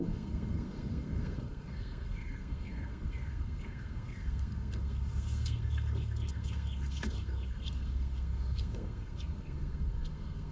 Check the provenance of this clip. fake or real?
fake